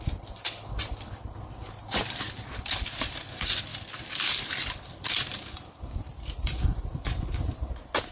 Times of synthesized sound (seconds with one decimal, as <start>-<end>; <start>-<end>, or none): 0.9-1.6; 3.7-7.1